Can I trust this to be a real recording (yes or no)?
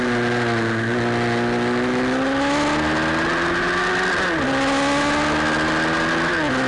yes